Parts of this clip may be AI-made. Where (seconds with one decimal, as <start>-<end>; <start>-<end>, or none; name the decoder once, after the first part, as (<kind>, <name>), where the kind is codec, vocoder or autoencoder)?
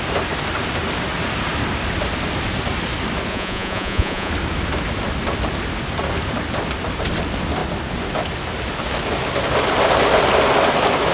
3.3-4.3 (vocoder, Vocos)